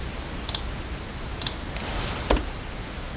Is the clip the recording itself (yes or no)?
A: yes